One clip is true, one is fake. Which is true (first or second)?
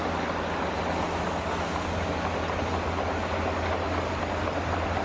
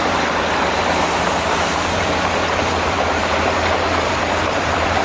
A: first